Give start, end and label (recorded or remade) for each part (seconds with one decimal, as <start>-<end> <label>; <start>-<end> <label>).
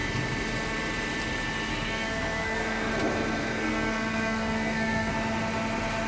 0.0-1.7 recorded; 1.7-2.9 remade; 2.9-3.4 recorded; 3.4-5.1 remade; 5.1-6.1 recorded